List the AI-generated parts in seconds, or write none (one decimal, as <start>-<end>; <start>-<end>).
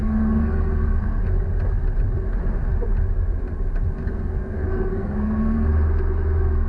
0.0-1.2; 4.0-5.7